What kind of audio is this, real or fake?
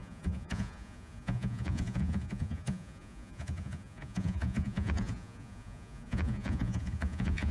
fake